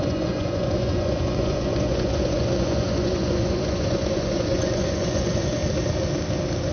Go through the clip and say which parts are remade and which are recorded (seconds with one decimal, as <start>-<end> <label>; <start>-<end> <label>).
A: 0.0-5.6 remade; 5.6-6.7 recorded